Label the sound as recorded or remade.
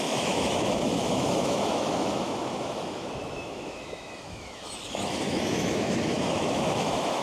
remade